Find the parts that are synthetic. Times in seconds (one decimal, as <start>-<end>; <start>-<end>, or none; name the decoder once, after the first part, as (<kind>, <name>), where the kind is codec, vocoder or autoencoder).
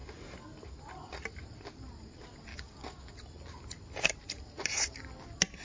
2.5-3.1 (codec, DAC)